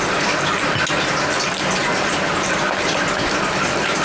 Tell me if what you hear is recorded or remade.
recorded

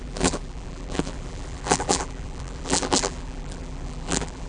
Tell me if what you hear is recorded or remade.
remade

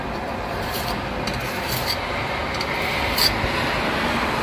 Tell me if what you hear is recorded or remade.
recorded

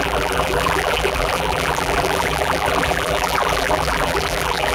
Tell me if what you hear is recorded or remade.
remade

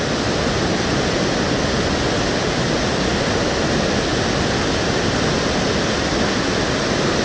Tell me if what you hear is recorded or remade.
recorded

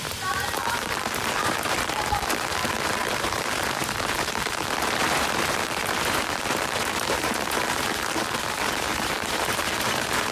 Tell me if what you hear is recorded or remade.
remade